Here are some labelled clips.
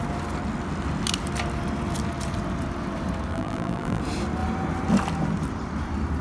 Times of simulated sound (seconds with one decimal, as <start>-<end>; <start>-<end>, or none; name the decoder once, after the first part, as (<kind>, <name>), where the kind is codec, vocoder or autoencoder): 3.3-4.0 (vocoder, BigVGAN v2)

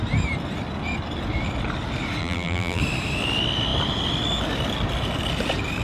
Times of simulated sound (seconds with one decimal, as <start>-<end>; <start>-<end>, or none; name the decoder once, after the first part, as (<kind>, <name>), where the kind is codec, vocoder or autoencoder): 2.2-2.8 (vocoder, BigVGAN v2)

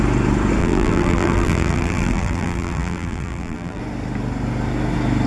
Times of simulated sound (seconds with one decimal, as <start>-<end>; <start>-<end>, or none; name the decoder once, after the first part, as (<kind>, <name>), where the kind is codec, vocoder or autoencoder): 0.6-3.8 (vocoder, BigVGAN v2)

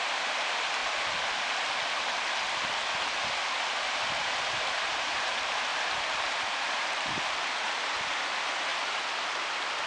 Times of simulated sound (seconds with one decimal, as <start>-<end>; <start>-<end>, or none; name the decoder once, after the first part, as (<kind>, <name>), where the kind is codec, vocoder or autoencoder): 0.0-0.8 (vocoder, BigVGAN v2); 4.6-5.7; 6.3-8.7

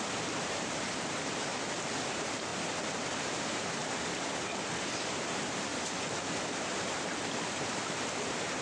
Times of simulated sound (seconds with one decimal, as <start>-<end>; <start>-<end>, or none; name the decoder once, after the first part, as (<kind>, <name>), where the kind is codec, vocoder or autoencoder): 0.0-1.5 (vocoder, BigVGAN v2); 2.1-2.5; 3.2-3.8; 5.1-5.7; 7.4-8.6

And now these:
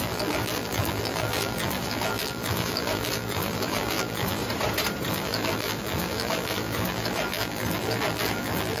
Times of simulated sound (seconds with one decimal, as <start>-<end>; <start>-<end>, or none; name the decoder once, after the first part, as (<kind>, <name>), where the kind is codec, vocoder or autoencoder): 0.0-4.4 (vocoder, BigVGAN v2); 5.1-8.8